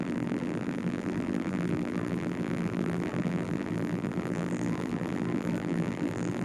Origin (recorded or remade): remade